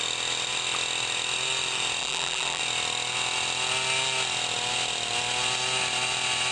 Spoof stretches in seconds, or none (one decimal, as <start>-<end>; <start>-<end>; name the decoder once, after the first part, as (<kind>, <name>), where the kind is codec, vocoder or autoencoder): 2.0-2.6 (vocoder, BigVGAN v2)